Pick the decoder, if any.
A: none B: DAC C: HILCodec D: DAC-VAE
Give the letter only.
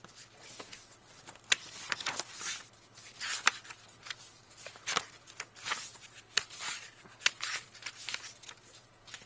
A